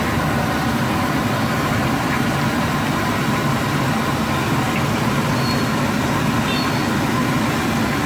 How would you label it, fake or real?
real